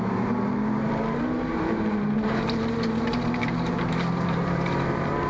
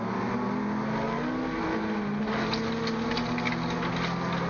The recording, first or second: second